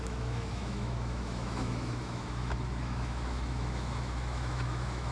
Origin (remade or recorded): remade